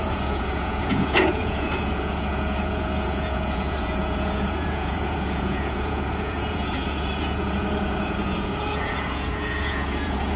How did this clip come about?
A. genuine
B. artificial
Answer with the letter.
B